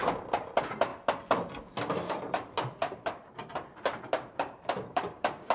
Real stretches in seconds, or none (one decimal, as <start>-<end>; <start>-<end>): 0.0-2.8